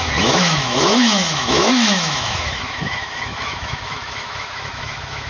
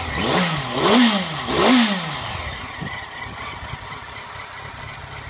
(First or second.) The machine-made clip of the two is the first